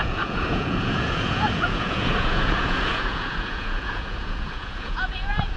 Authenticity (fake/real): fake